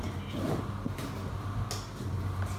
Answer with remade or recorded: recorded